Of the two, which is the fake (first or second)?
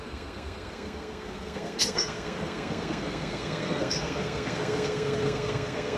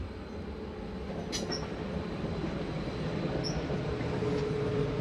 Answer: first